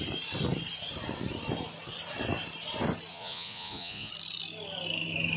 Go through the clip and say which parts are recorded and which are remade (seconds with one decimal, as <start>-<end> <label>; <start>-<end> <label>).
0.0-3.1 recorded; 3.1-4.1 remade; 4.1-5.4 recorded